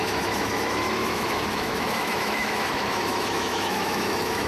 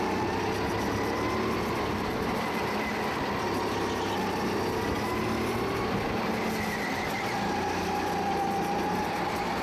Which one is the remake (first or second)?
first